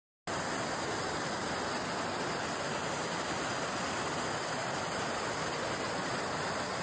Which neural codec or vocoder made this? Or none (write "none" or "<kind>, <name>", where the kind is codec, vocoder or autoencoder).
none